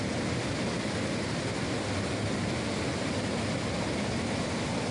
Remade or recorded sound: recorded